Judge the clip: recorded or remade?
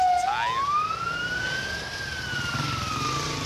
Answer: recorded